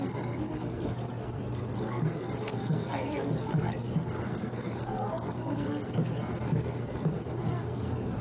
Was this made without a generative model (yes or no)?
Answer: no